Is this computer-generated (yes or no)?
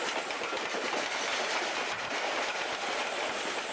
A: no